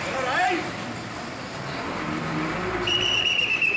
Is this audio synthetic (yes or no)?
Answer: yes